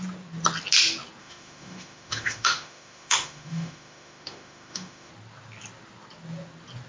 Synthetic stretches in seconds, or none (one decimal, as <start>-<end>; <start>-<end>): 1.2-5.1

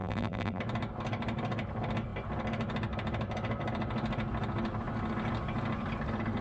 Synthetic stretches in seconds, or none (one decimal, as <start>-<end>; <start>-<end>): 0.0-0.6